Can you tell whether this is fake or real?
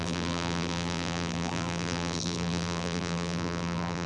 fake